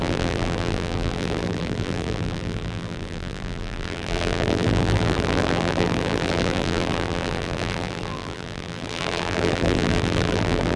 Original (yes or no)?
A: no